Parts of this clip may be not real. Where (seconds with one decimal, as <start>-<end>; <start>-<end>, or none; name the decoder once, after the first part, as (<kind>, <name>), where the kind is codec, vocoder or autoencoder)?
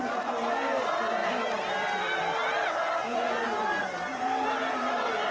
2.4-2.9 (vocoder, BigVGAN v2)